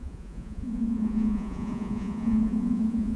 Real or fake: fake